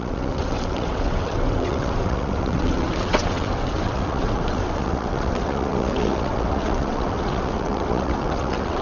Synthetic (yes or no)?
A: yes